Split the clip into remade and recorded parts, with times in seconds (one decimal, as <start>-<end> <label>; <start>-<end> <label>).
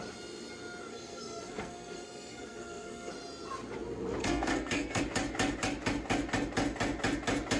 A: 0.0-0.9 recorded; 0.9-3.1 remade; 3.1-4.2 recorded; 4.2-5.0 remade; 5.0-7.6 recorded